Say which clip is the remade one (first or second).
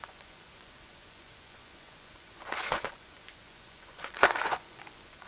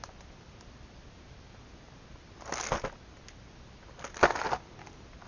first